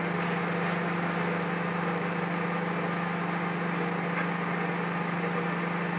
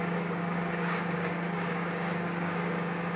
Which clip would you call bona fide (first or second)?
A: first